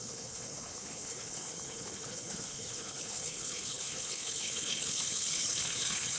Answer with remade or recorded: remade